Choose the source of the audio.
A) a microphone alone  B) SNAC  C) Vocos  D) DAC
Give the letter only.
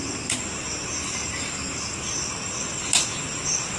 A